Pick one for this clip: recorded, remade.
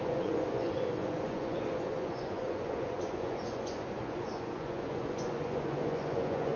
remade